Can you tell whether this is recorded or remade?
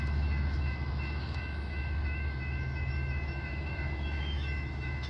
remade